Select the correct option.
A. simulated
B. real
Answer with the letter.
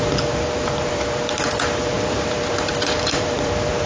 A